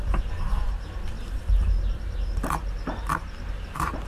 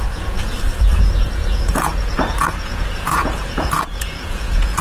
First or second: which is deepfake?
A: second